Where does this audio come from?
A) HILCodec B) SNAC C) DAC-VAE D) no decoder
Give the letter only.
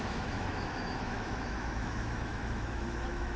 C